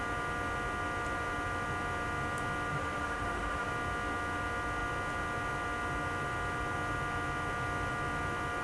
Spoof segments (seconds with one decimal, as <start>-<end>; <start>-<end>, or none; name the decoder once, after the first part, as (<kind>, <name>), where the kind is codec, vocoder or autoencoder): 2.7-3.7 (autoencoder, DAC-VAE)